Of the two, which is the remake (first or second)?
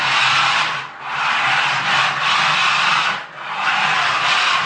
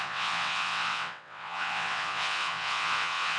second